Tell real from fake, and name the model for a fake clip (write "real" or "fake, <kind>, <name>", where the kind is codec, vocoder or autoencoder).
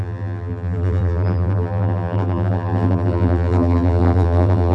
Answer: fake, vocoder, BigVGAN v2